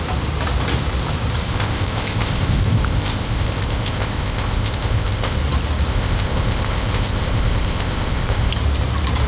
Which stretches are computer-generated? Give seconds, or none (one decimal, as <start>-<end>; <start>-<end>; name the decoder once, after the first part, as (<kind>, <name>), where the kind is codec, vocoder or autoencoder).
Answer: 1.5-5.4 (codec, ZipCodec); 5.9-8.5